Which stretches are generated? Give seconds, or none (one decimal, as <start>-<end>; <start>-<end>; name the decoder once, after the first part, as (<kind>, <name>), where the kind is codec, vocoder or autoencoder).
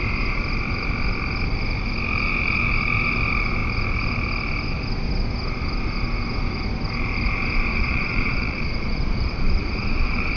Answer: 7.7-10.4 (vocoder, Vocos)